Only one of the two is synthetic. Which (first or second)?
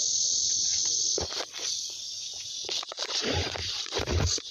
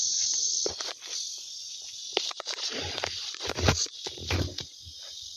first